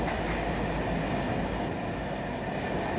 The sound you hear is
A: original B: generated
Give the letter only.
A